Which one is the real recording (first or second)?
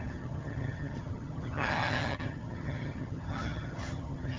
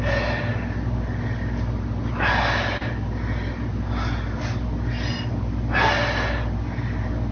second